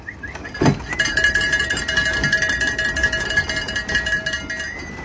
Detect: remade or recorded recorded